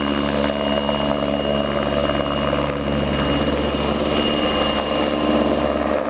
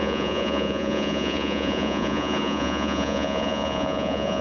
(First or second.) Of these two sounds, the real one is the first